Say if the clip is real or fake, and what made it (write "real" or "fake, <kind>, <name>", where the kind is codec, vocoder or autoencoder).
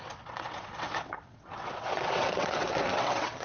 fake, vocoder, WaveNeXt